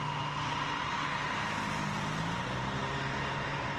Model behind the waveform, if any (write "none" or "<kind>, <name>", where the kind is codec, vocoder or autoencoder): none